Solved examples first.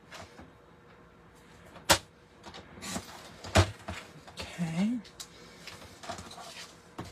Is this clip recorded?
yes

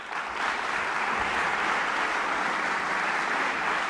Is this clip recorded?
no